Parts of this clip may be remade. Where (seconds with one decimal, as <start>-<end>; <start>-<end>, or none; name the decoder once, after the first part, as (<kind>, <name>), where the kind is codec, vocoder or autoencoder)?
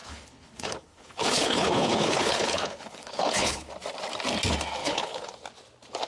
0.0-3.7 (codec, HILCodec); 4.8-5.3